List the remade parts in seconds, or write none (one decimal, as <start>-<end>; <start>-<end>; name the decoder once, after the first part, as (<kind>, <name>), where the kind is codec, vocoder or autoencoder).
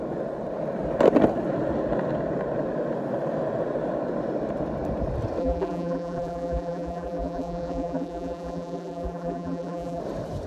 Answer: 5.4-10.0 (vocoder, BigVGAN v2)